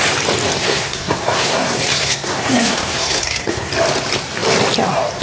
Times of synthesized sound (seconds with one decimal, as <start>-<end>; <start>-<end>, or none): 0.6-3.7